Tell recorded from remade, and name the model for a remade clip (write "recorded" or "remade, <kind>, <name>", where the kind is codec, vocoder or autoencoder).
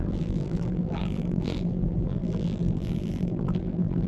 remade, vocoder, BigVGAN v2